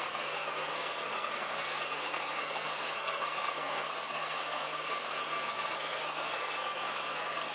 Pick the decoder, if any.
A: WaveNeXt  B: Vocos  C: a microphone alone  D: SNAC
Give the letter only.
D